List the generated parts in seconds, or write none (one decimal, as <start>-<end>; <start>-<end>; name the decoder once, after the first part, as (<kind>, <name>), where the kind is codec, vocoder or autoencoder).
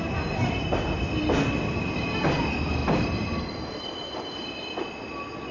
none